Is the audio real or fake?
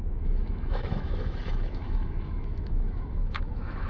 fake